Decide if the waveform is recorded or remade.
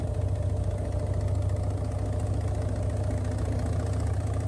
recorded